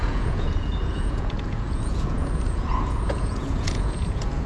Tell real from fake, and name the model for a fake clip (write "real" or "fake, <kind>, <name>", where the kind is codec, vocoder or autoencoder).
fake, vocoder, Vocos